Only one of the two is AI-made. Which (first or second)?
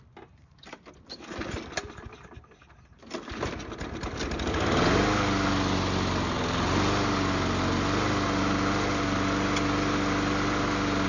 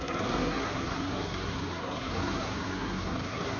second